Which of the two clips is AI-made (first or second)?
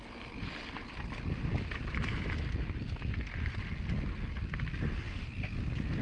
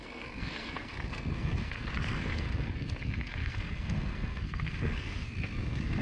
second